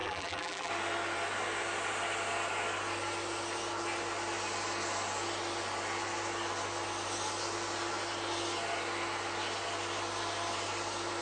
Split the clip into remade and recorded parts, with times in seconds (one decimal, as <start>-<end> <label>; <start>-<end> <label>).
0.0-0.7 remade; 0.7-11.2 recorded